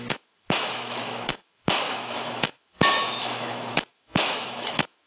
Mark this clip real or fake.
fake